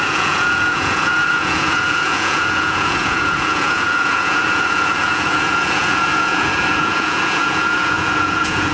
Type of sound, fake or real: fake